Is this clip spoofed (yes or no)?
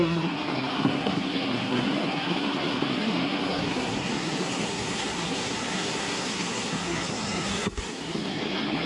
yes